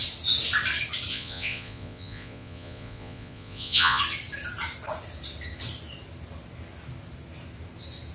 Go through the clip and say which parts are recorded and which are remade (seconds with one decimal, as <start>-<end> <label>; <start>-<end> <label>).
0.0-1.1 recorded; 1.1-4.0 remade; 4.0-8.1 recorded